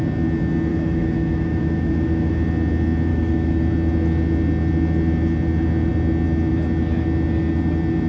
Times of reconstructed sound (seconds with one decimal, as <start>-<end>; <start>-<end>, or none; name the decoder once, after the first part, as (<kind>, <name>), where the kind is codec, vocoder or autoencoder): 0.7-2.3 (autoencoder, DAC-VAE); 3.1-3.6